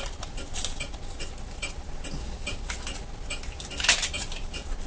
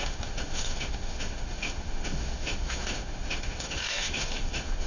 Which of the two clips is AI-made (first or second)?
second